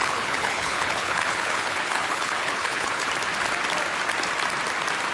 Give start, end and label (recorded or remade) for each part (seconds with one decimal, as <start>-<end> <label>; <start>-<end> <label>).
0.0-3.1 remade; 3.1-5.1 recorded